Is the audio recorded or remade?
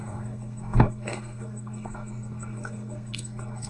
remade